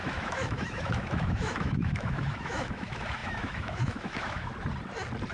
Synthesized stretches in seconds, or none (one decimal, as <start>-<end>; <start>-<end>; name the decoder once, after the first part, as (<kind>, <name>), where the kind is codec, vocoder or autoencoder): 0.0-4.5 (autoencoder, DAC-VAE)